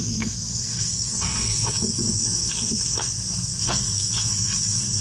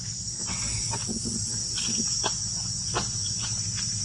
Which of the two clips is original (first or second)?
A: second